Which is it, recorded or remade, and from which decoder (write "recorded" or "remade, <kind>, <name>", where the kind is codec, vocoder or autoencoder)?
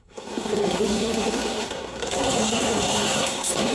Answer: remade, codec, SNAC